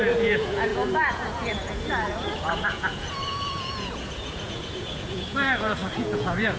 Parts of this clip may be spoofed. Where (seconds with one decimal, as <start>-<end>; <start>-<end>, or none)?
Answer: 0.0-6.6